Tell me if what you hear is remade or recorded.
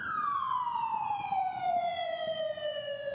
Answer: remade